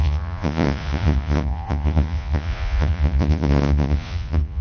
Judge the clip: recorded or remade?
remade